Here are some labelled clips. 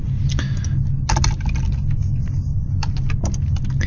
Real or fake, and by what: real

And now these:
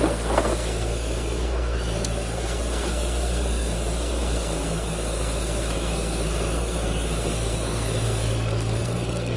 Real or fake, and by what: fake, codec, SNAC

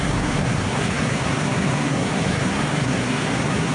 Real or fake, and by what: fake, codec, SNAC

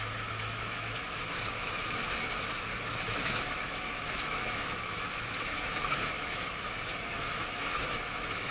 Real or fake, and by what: fake, autoencoder, DAC-VAE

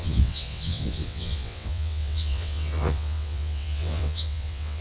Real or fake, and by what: fake, vocoder, WaveNeXt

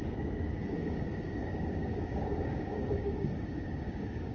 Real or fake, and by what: fake, codec, DAC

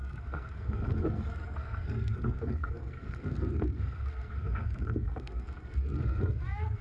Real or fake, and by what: fake, codec, SNAC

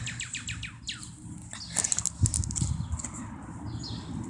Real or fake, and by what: real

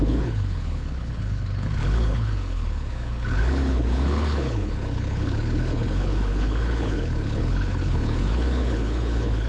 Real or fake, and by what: fake, codec, HILCodec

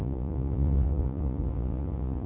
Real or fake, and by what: fake, vocoder, Vocos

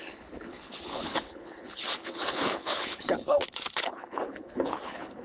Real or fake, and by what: fake, codec, HILCodec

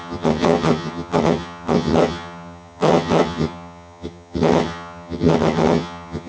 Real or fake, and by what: fake, vocoder, HiFi-GAN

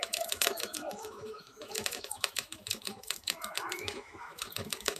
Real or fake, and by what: fake, autoencoder, DAC-VAE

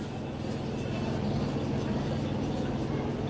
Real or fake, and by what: real